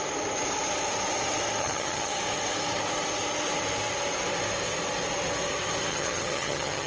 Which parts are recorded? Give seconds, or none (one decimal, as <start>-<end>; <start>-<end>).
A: 0.0-1.6; 2.1-5.9